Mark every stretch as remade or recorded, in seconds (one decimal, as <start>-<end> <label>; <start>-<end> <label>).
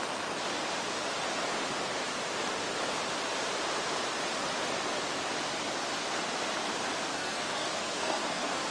0.0-7.1 recorded; 7.1-8.7 remade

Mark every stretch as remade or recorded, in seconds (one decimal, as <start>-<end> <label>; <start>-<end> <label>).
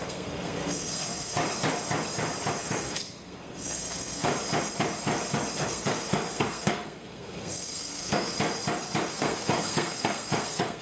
0.0-1.3 remade; 1.3-2.6 recorded; 2.6-4.3 remade; 4.3-5.6 recorded; 5.6-8.3 remade; 8.3-9.1 recorded; 9.1-10.8 remade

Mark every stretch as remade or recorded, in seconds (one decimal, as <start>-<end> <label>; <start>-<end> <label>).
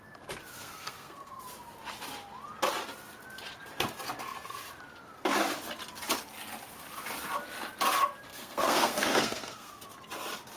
0.0-0.5 recorded; 0.5-1.4 remade; 1.4-8.3 recorded; 8.3-9.7 remade; 9.7-10.6 recorded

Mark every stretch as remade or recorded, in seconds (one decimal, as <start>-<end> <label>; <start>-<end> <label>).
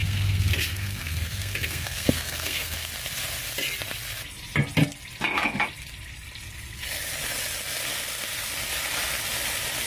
0.0-2.9 remade; 2.9-9.9 recorded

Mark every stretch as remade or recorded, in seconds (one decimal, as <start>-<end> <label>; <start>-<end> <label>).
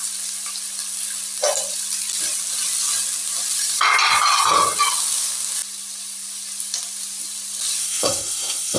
0.0-7.8 recorded; 7.8-8.8 remade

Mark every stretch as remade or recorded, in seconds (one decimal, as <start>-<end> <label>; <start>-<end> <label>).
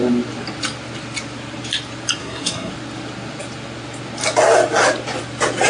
0.0-2.2 recorded; 2.2-2.7 remade; 2.7-5.7 recorded